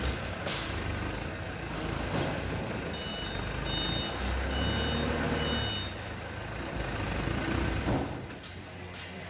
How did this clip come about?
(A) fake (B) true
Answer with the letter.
B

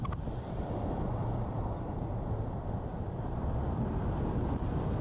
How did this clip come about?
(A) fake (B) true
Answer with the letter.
B